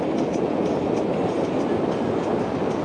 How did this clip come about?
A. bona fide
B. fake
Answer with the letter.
A